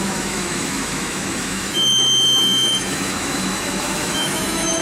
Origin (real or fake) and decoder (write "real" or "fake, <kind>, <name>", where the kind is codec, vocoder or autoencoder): fake, autoencoder, DAC-VAE